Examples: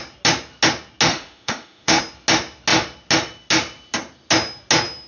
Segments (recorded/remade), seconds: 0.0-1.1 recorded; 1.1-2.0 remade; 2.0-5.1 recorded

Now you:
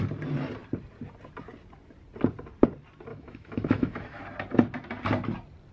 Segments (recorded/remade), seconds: 0.0-3.1 recorded; 3.1-4.2 remade; 4.2-5.7 recorded

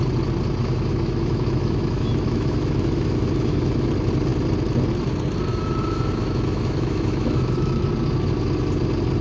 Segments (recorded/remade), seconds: 0.0-0.6 recorded; 0.6-3.9 remade; 3.9-5.5 recorded; 5.5-7.8 remade; 7.8-9.2 recorded

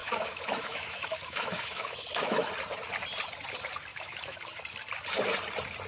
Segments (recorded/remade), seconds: 0.0-2.5 remade; 2.5-3.9 recorded; 3.9-4.4 remade; 4.4-5.9 recorded

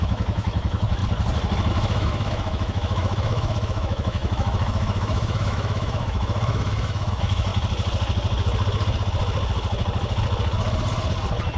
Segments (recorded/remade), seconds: 0.0-1.0 remade; 1.0-1.7 recorded; 1.7-7.5 remade; 7.5-11.6 recorded